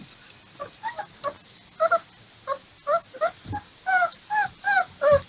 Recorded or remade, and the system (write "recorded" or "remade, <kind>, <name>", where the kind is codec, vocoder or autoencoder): recorded